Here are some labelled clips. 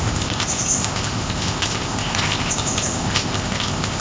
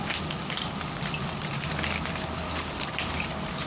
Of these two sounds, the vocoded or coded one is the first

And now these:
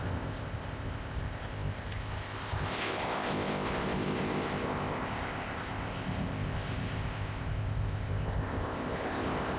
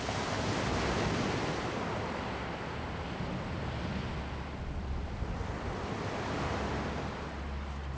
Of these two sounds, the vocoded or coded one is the first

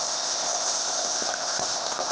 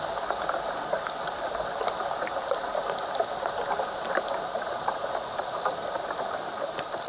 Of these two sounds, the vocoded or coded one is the first